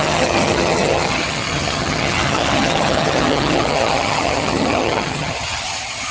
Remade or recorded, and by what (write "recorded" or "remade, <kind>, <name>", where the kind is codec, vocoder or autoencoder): remade, vocoder, HiFi-GAN